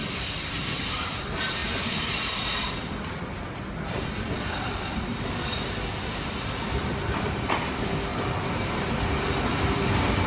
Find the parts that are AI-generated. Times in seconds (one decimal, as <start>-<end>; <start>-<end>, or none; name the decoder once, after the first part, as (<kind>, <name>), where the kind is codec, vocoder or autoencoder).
0.9-8.1 (vocoder, BigVGAN v2); 8.8-10.3